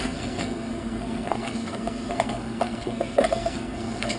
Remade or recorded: remade